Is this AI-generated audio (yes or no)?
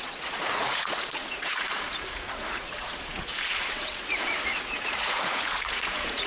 yes